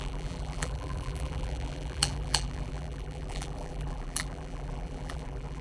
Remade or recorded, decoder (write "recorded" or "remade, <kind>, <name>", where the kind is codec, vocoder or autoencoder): remade, vocoder, BigVGAN v2